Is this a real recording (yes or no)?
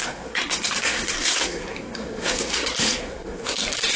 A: no